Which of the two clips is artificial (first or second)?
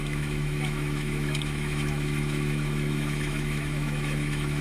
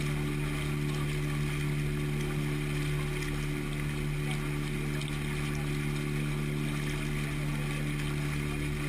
first